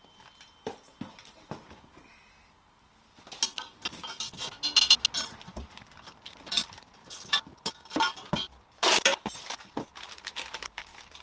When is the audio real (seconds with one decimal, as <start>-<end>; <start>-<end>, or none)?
0.0-11.2